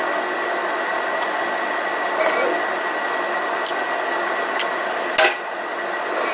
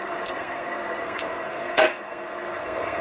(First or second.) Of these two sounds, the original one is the first